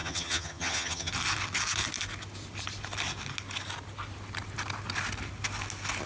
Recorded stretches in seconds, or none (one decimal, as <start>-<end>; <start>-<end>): 1.1-6.1